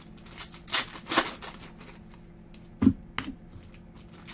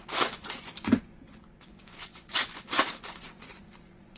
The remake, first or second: second